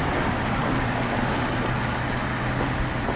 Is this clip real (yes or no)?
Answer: yes